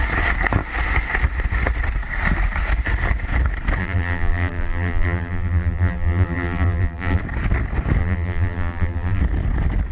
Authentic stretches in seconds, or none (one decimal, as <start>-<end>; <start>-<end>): 0.0-3.8; 7.2-8.0; 9.2-9.9